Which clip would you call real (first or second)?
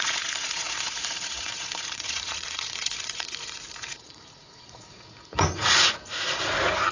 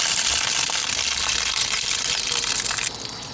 second